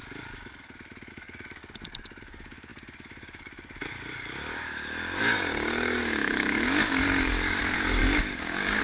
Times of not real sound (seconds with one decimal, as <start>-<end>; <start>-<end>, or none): 1.1-1.6; 2.2-8.8